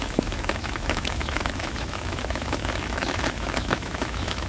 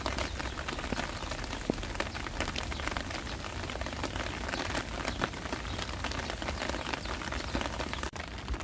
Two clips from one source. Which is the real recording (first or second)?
second